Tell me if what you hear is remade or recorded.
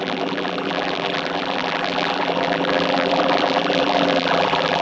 remade